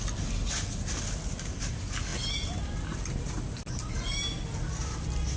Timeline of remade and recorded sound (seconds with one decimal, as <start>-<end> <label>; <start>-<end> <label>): 0.0-5.4 recorded